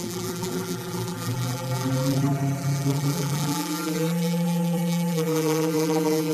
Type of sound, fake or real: fake